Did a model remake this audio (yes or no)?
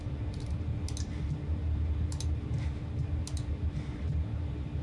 no